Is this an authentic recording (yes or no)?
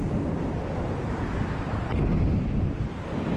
no